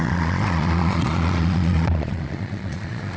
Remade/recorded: remade